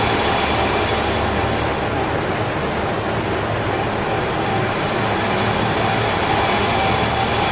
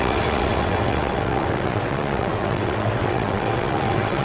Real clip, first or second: first